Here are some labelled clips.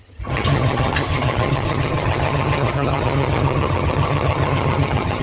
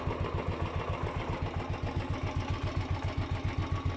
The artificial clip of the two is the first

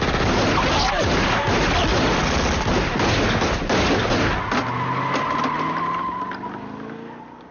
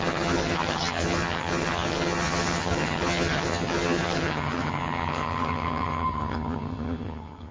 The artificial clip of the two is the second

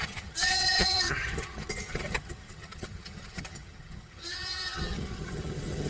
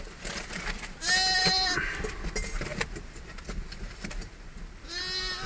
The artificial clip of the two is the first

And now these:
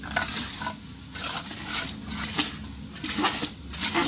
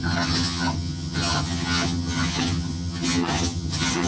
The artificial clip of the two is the second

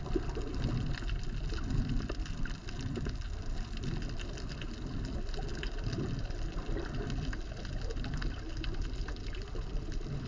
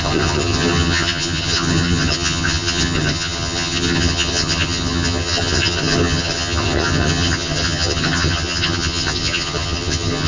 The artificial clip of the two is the second